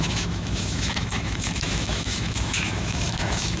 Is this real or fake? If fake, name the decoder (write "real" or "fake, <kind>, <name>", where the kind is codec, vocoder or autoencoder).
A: fake, autoencoder, DAC-VAE